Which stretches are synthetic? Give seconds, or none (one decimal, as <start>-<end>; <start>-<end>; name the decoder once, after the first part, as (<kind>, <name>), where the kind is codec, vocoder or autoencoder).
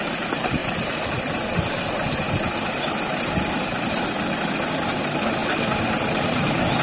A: none